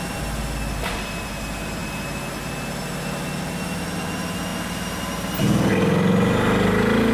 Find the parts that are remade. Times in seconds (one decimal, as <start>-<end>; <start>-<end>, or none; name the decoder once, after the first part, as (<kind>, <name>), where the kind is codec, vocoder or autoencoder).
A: none